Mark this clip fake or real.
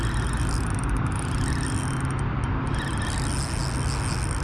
real